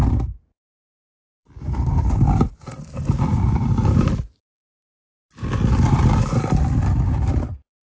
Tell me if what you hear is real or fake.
real